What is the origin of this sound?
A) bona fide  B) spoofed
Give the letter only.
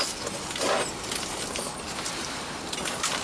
A